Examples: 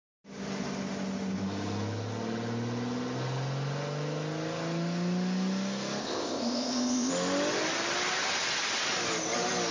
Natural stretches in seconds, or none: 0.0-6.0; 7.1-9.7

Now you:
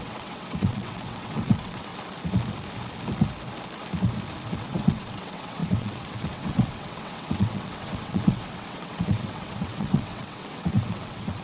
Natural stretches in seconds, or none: 1.9-4.5

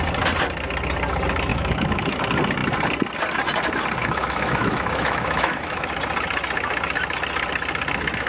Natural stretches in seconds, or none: 0.0-1.5; 2.2-4.0; 5.9-8.3